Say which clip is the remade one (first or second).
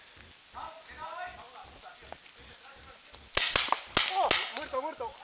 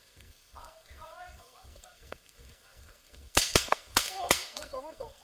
second